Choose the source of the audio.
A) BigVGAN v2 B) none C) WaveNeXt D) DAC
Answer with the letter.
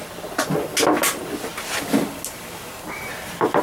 B